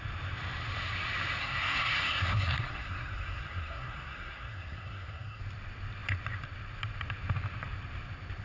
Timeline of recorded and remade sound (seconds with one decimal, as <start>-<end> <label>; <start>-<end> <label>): 0.0-1.4 recorded; 1.4-5.4 remade; 5.4-8.4 recorded